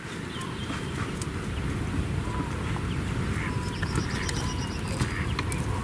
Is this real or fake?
real